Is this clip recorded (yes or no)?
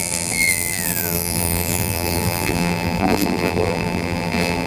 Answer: no